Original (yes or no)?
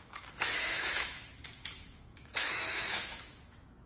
no